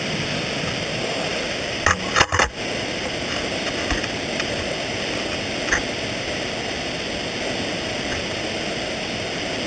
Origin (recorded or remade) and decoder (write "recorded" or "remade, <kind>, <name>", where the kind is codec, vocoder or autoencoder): recorded